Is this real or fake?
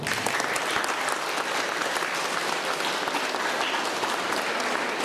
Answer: real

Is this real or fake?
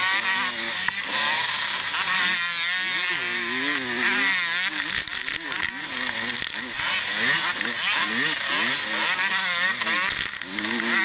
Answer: real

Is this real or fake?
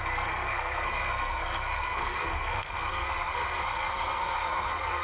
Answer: fake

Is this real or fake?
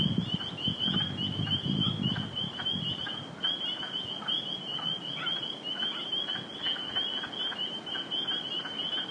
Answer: real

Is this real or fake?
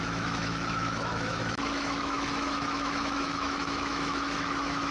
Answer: fake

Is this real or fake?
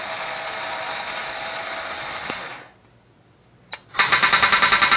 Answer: real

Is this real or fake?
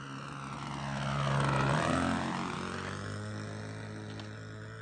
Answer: real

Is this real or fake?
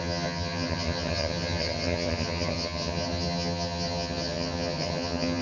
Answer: fake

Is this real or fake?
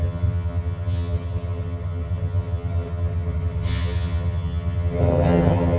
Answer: fake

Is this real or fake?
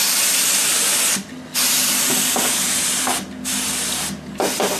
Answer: real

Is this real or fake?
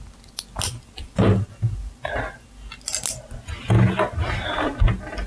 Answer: real